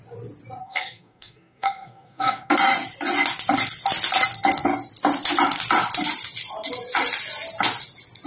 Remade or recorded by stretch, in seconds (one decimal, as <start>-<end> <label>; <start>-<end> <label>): 0.0-0.6 recorded; 0.6-2.5 remade; 2.5-8.3 recorded